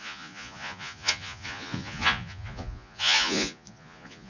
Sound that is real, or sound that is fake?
fake